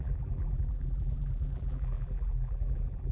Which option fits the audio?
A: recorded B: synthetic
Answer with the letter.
B